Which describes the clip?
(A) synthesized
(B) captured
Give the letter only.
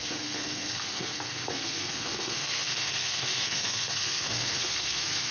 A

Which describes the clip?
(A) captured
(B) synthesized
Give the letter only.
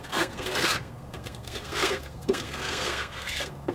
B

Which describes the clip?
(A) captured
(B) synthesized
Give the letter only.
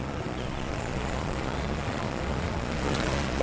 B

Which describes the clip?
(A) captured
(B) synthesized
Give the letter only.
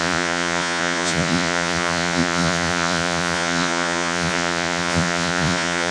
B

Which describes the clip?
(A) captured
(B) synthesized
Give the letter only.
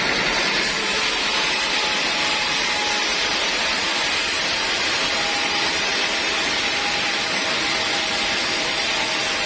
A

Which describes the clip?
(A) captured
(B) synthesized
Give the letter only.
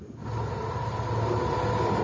A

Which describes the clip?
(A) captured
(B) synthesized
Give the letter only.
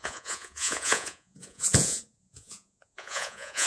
B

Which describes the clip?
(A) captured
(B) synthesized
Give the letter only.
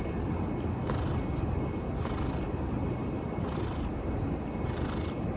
A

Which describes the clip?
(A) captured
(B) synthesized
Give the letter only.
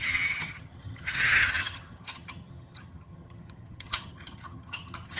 B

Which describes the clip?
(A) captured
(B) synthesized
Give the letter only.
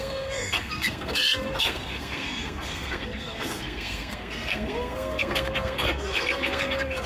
B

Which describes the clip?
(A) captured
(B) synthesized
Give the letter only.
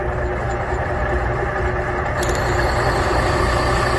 A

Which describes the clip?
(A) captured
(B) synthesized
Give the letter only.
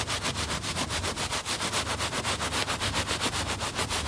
A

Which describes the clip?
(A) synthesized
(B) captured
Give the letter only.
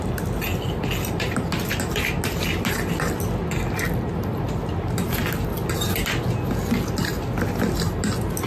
B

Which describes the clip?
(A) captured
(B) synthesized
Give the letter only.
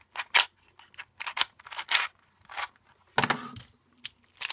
A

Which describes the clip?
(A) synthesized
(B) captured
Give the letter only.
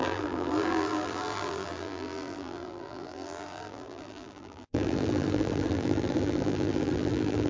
A